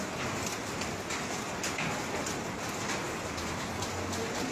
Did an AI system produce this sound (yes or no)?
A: no